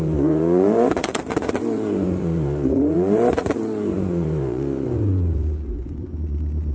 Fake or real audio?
fake